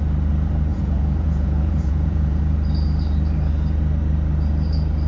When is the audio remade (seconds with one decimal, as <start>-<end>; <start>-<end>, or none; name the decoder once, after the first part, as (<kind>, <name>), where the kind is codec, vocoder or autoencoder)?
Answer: 0.7-2.4 (vocoder, Vocos)